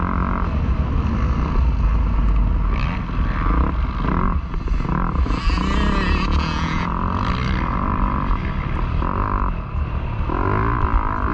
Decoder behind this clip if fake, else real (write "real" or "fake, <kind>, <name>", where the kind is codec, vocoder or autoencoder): real